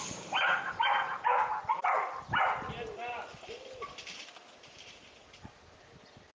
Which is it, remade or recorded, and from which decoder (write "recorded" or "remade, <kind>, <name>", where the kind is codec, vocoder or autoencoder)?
recorded